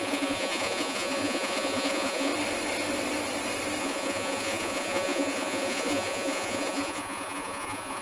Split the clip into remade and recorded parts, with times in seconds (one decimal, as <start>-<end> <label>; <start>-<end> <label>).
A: 0.0-2.3 remade; 2.3-3.8 recorded; 3.8-8.0 remade